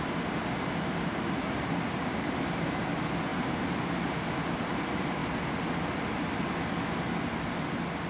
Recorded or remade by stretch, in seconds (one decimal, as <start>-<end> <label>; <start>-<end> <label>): 0.0-5.2 remade; 5.2-8.1 recorded